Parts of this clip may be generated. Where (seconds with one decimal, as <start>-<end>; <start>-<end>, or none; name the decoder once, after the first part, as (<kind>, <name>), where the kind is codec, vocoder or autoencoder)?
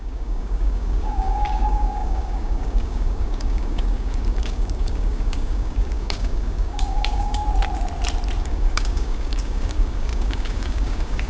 0.0-7.4 (codec, DAC); 8.4-11.3